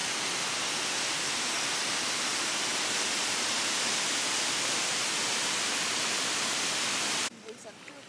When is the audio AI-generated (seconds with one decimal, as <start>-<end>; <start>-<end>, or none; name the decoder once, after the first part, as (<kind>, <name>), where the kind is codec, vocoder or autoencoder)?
none